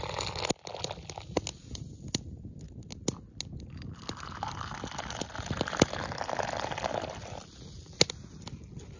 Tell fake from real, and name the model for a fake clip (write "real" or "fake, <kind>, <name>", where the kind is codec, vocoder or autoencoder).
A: real